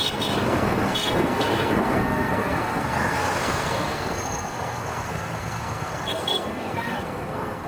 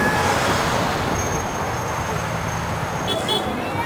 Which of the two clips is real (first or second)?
second